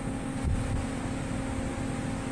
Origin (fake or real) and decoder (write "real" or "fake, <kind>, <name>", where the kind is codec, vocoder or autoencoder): real